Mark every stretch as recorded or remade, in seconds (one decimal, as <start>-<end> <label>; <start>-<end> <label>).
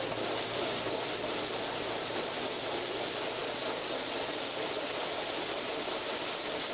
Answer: 0.0-6.7 remade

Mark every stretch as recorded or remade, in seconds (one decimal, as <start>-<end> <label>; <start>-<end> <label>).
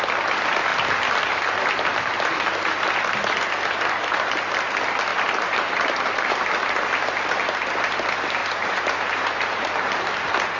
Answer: 0.0-5.1 recorded; 5.1-6.4 remade; 6.4-8.4 recorded; 8.4-10.0 remade; 10.0-10.6 recorded